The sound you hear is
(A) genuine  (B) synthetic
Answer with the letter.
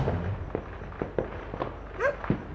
A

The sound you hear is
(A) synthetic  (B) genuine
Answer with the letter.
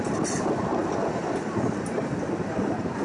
B